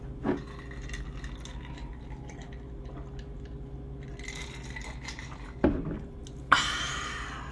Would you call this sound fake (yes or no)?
no